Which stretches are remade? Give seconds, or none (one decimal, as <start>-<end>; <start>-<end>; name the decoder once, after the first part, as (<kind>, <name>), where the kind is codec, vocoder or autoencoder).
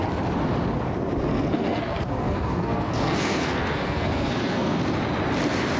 1.3-4.8 (codec, SNAC)